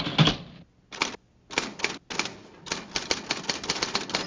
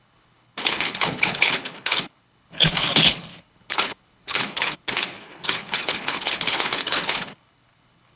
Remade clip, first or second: second